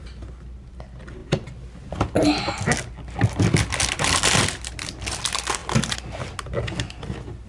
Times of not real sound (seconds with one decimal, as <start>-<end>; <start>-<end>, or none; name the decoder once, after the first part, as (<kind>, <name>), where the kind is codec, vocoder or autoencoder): none